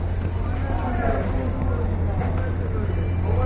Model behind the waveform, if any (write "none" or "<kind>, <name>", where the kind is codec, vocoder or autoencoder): none